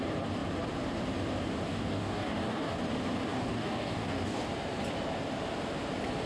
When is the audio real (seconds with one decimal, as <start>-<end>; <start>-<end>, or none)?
0.0-1.7; 2.8-3.3; 4.4-6.3